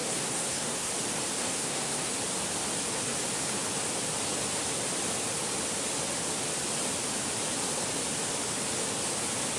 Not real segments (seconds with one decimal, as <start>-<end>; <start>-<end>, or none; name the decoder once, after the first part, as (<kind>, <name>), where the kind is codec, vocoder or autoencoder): 0.0-0.9 (codec, SNAC); 1.4-2.1